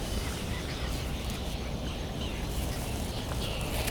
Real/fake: real